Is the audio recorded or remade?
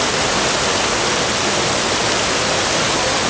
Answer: recorded